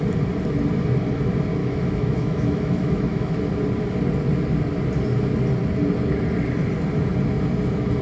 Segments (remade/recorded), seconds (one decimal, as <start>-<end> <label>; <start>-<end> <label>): 0.0-1.6 recorded; 1.6-3.4 remade; 3.4-8.0 recorded